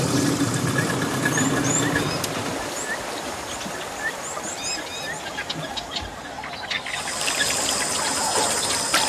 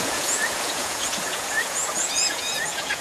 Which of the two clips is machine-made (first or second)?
second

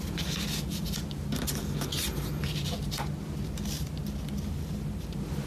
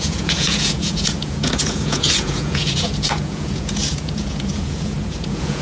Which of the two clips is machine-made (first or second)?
second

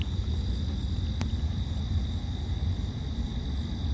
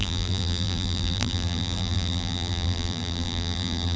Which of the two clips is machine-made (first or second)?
second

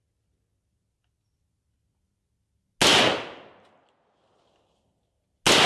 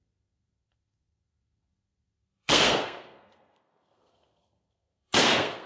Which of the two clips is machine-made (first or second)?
second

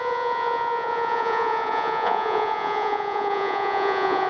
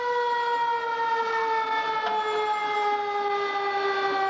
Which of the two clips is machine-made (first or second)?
first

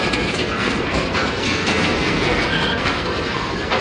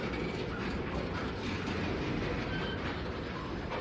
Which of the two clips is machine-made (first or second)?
first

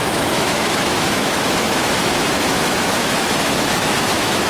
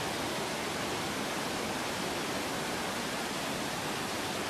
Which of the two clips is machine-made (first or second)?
first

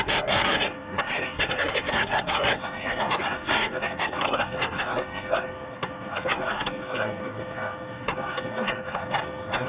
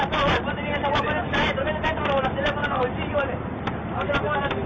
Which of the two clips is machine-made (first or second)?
first